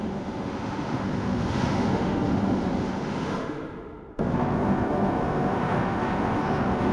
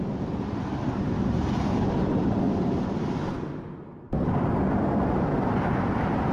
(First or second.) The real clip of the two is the second